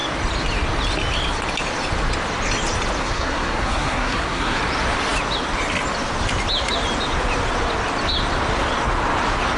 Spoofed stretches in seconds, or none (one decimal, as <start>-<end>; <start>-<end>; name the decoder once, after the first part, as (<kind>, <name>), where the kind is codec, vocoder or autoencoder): 3.0-4.6 (codec, SNAC)